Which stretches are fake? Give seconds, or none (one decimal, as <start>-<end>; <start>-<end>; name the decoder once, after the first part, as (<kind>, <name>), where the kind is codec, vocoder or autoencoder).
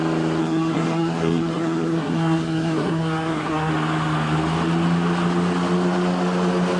0.4-3.7 (codec, SNAC)